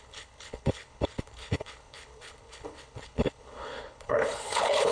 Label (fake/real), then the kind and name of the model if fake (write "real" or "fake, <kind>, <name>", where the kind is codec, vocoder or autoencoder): fake, codec, HILCodec